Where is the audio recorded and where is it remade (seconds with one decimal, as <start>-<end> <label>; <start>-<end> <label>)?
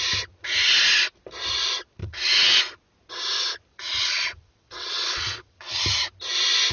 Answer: 0.0-2.0 recorded; 2.0-2.6 remade; 2.6-3.7 recorded; 3.7-5.8 remade; 5.8-6.7 recorded